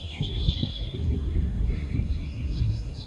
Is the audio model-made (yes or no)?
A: yes